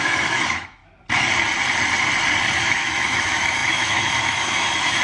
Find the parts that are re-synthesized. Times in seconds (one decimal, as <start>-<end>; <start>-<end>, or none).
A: 0.0-0.8; 2.6-5.0